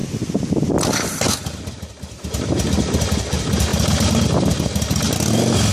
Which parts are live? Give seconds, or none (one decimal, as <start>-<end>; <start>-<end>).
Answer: 0.0-5.7